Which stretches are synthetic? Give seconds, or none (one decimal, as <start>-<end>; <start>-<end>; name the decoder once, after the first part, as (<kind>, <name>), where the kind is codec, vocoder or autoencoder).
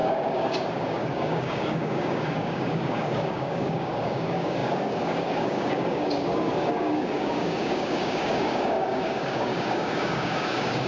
0.0-10.9 (codec, DAC)